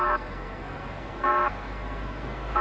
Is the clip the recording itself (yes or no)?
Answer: no